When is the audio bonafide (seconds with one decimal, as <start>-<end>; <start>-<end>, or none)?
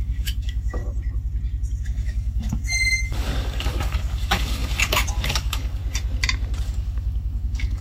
0.8-1.8; 5.8-6.6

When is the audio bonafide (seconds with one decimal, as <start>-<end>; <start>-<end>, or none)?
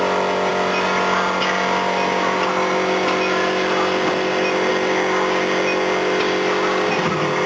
0.0-7.5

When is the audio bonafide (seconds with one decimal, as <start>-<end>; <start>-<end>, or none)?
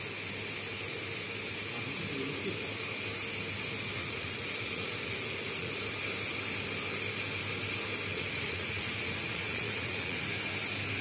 0.0-4.0; 5.7-8.1; 10.3-11.0